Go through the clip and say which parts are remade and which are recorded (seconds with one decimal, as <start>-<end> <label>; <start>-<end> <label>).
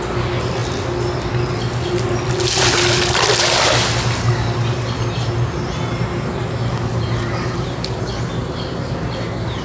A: 0.0-9.6 recorded